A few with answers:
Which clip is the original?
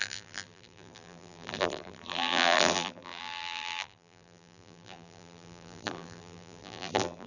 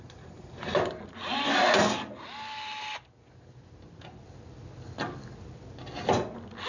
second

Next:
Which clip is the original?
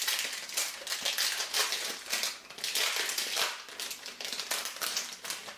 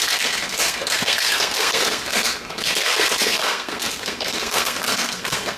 first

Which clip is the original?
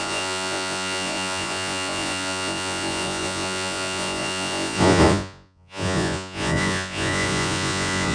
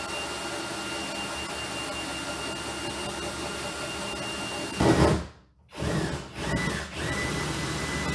second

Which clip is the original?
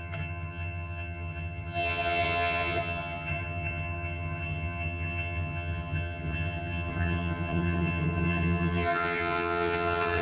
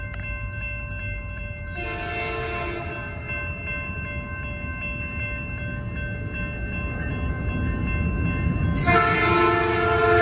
second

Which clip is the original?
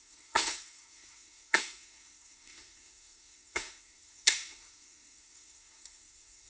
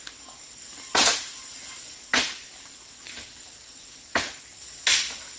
second